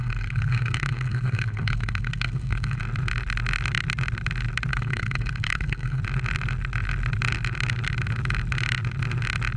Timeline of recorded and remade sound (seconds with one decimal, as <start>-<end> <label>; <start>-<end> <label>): 0.0-2.8 remade; 2.8-4.7 recorded; 4.7-6.0 remade; 6.0-9.6 recorded